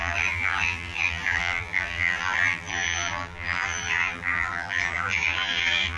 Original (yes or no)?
no